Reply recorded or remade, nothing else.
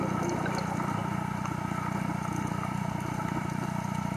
recorded